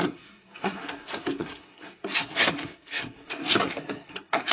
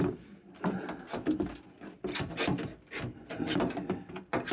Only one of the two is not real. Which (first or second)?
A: first